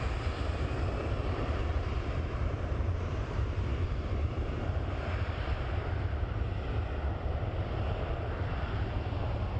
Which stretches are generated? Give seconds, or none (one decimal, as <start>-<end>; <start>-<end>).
1.6-6.5